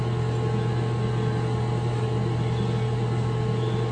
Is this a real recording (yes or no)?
yes